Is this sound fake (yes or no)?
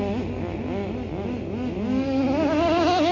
no